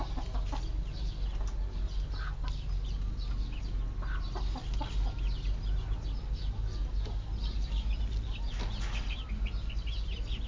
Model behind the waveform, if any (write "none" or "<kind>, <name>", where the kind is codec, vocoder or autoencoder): none